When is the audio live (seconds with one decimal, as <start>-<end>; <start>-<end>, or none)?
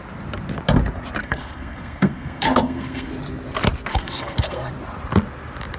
0.0-1.2; 3.1-3.9; 4.7-5.8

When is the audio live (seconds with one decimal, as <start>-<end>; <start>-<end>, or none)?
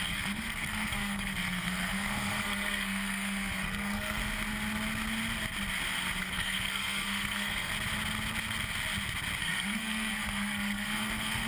4.2-6.2; 7.7-9.4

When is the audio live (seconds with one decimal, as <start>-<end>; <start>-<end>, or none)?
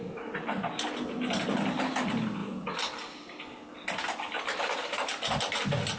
0.0-6.0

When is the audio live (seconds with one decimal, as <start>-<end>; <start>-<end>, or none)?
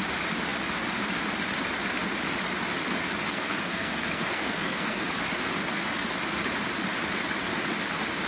0.0-3.3; 5.1-8.3